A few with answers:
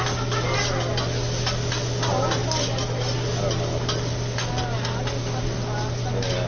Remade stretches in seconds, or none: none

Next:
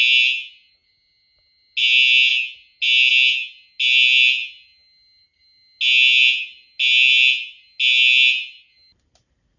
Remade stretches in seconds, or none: none

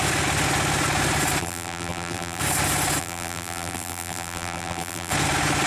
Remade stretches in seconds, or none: 1.4-2.4 (vocoder, BigVGAN v2); 3.0-5.1